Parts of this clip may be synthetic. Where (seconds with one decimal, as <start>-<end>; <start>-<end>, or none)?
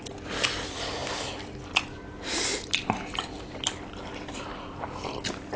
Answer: none